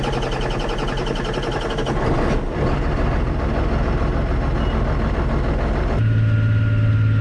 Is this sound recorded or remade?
recorded